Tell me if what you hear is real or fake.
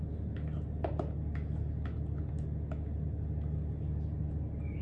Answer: real